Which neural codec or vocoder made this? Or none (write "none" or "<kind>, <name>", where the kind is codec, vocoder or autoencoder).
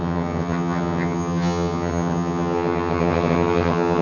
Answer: vocoder, HiFi-GAN